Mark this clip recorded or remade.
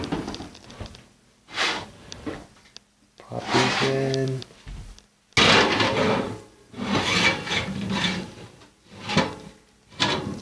recorded